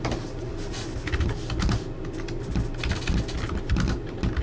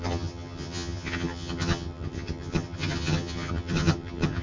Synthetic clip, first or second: second